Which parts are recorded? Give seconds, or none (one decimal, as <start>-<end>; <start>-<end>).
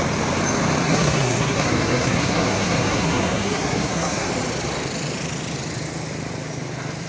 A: 0.0-0.8; 4.3-7.1